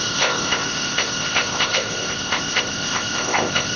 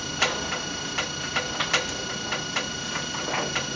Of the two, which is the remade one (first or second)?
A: first